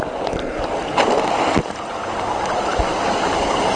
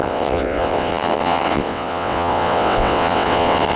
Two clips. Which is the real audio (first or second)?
first